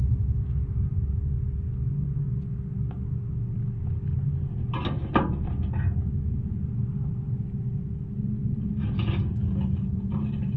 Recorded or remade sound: recorded